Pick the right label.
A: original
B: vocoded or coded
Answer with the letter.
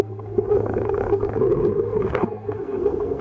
B